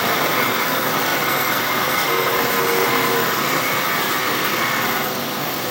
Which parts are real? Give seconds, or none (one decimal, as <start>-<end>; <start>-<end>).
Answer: 3.6-4.2